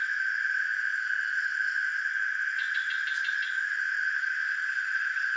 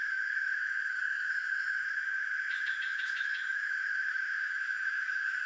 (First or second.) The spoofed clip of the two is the second